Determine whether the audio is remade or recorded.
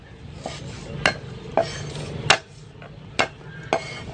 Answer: recorded